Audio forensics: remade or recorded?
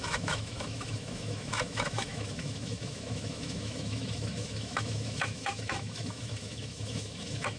remade